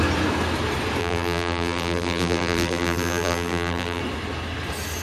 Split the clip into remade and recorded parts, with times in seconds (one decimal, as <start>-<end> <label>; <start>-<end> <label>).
0.0-1.0 recorded; 1.0-4.0 remade; 4.0-5.0 recorded